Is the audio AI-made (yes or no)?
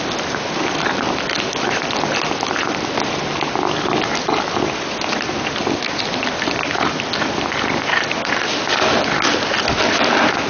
no